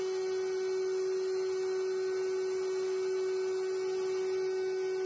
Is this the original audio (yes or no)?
yes